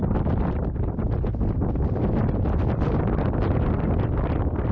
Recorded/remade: remade